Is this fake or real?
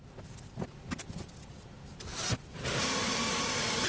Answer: real